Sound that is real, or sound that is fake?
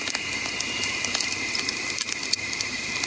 real